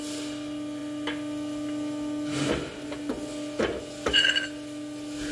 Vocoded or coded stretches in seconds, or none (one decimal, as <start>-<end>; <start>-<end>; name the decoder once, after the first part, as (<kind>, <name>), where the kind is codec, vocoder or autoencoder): none